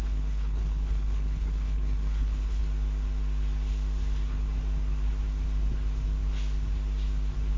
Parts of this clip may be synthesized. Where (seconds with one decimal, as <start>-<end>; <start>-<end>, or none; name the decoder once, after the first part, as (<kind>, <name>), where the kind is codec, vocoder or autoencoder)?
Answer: 0.0-2.6 (codec, HILCodec)